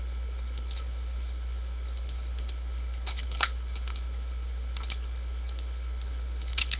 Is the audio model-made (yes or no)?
yes